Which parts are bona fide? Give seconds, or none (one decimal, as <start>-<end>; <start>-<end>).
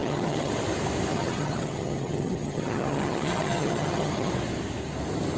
0.5-1.1; 4.3-5.4